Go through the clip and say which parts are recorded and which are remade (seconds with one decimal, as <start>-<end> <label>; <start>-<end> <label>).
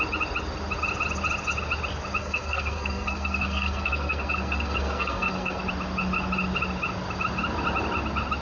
0.0-2.2 recorded; 2.2-5.6 remade; 5.6-8.4 recorded